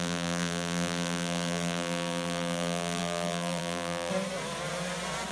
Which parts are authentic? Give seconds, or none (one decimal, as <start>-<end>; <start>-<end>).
4.1-5.3